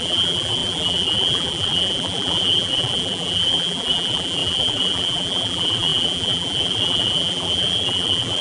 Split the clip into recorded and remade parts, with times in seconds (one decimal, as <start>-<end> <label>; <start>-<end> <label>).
0.0-8.4 remade